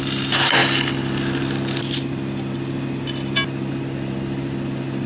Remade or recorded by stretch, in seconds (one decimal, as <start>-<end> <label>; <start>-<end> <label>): 0.0-5.1 recorded